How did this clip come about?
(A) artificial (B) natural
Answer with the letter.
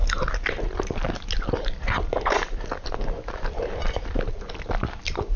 B